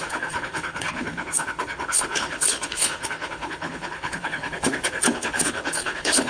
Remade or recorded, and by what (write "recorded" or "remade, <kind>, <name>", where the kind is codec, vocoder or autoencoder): remade, codec, HILCodec